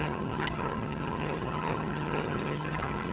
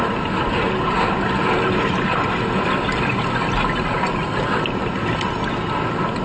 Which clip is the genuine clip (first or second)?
second